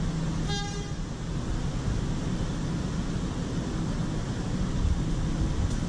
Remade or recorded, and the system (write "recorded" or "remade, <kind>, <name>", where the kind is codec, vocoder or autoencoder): recorded